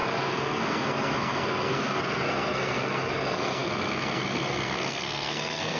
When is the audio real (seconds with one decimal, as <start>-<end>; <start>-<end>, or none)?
none